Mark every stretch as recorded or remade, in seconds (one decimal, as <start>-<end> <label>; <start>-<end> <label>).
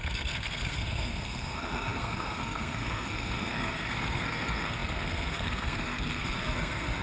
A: 0.0-7.0 remade